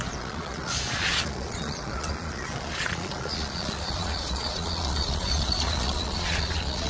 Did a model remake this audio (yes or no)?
yes